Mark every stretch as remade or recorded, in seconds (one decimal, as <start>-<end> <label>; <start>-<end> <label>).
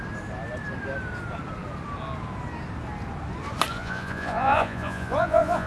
0.0-3.7 recorded; 3.7-5.7 remade